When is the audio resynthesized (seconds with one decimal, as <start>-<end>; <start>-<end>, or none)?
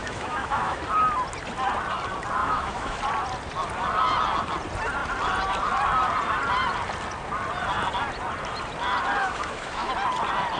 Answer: 0.0-0.8; 2.4-3.0; 9.2-9.9